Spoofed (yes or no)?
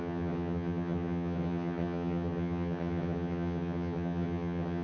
yes